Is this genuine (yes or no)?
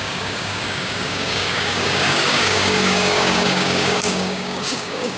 no